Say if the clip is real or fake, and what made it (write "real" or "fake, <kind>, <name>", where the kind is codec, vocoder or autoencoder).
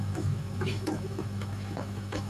fake, autoencoder, DAC-VAE